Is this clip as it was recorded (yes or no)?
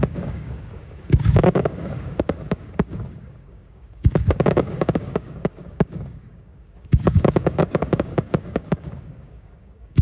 no